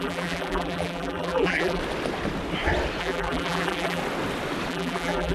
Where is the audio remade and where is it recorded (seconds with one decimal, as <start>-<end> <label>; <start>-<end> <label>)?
0.0-1.8 remade; 1.8-3.0 recorded; 3.0-4.0 remade; 4.0-4.7 recorded; 4.7-5.3 remade